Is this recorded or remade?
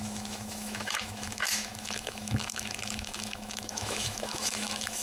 remade